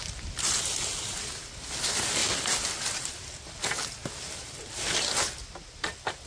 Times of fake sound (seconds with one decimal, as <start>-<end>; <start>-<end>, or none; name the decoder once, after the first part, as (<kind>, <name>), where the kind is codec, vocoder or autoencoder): none